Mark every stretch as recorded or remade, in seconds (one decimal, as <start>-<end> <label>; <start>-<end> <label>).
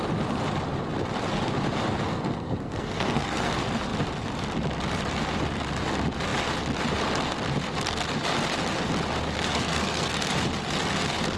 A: 0.0-2.1 recorded; 2.1-3.5 remade; 3.5-9.5 recorded; 9.5-10.1 remade; 10.1-11.4 recorded